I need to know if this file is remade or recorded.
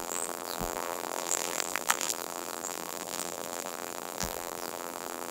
remade